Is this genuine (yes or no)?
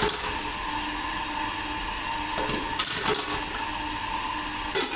yes